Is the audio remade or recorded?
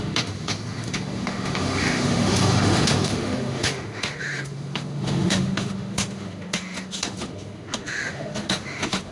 remade